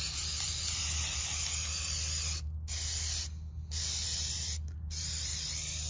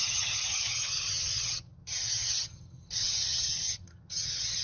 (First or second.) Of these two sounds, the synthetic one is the second